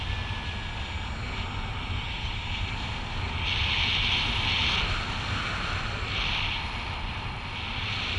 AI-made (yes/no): no